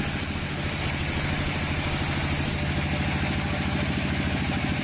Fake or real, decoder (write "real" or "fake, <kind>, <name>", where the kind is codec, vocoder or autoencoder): real